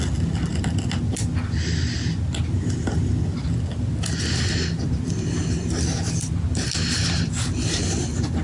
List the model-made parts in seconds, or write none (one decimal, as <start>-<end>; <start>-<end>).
5.6-6.1